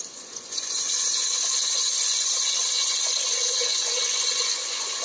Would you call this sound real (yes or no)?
no